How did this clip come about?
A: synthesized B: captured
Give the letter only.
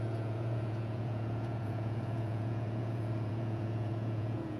A